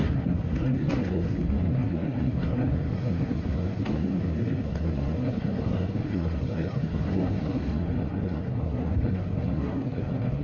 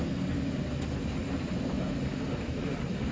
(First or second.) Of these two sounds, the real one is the second